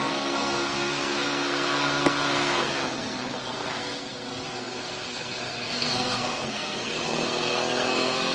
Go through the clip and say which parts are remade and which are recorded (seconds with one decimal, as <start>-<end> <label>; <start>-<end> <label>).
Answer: 0.0-8.3 remade